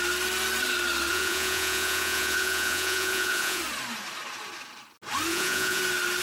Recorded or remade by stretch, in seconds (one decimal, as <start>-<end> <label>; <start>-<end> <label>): 0.0-1.1 recorded; 1.1-3.6 remade; 3.6-5.3 recorded; 5.3-5.8 remade; 5.8-6.2 recorded